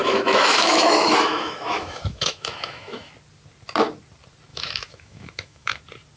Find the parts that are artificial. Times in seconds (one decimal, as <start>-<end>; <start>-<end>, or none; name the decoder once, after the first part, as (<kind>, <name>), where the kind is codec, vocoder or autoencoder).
0.0-3.1 (autoencoder, DAC-VAE); 4.5-5.8